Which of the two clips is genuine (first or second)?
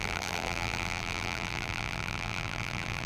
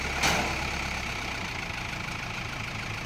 second